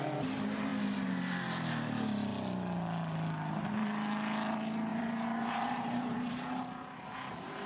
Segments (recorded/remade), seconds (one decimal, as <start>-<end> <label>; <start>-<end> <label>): 0.0-4.9 recorded; 4.9-6.3 remade; 6.3-7.7 recorded